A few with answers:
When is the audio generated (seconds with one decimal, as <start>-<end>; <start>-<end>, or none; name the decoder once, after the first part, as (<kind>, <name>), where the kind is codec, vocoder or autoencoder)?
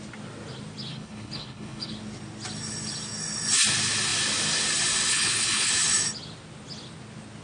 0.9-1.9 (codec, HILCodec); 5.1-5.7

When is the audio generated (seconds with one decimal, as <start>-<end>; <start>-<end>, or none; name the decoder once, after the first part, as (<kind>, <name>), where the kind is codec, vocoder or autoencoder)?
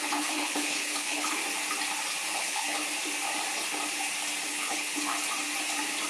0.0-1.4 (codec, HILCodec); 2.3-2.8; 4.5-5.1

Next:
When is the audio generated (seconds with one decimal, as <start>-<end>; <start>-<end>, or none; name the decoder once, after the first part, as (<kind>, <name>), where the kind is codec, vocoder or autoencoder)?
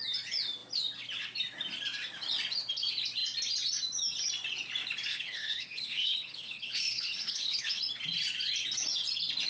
5.1-7.8 (codec, HILCodec)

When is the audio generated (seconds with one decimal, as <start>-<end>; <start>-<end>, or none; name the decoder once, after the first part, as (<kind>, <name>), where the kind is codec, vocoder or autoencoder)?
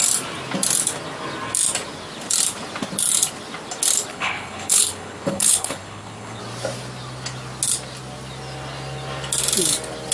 4.1-6.4 (codec, HILCodec)